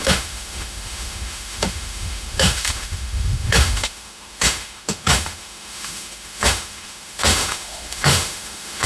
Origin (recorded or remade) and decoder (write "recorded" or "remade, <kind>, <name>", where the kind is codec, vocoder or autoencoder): remade, autoencoder, DAC-VAE